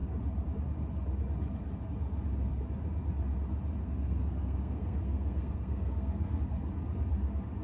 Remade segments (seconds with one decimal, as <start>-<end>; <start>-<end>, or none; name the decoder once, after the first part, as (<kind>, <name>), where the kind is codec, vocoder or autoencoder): 3.8-6.4 (codec, SNAC)